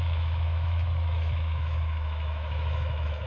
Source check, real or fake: fake